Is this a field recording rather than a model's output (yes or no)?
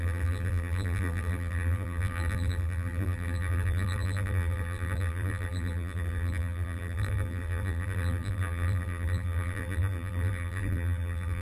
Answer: no